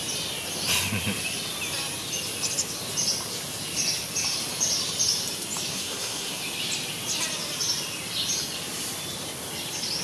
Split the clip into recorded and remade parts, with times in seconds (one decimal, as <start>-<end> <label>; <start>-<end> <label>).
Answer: 0.0-5.7 recorded; 5.7-6.4 remade; 6.4-10.0 recorded